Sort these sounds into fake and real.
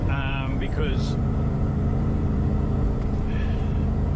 fake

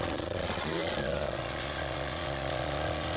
fake